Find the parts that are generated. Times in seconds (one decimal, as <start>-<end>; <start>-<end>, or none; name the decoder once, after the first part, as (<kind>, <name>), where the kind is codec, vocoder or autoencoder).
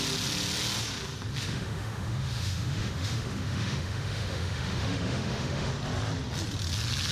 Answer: 1.4-5.7 (autoencoder, DAC-VAE)